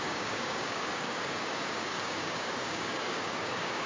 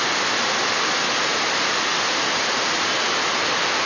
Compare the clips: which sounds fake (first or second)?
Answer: first